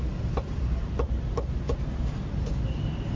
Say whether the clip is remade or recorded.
recorded